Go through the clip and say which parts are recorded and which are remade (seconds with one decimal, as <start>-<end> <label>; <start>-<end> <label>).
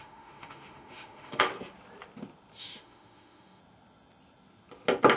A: 0.0-1.5 remade; 1.5-2.6 recorded; 2.6-3.6 remade; 3.6-5.2 recorded